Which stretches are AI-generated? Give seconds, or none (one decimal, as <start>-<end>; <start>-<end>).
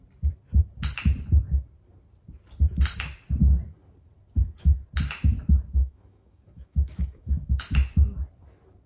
5.8-7.5